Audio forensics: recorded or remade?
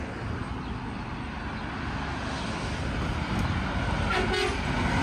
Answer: recorded